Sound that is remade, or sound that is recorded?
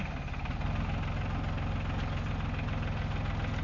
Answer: recorded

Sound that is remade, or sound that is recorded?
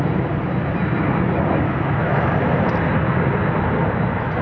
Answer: recorded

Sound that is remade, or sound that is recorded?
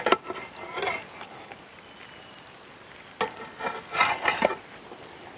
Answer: recorded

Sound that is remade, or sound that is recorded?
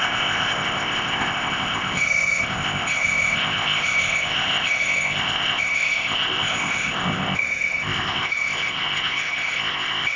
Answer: remade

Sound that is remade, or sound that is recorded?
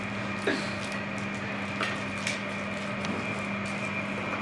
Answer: recorded